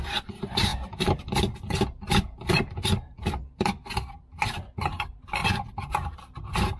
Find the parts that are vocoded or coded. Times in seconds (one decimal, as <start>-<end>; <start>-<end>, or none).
0.0-0.7; 4.8-5.4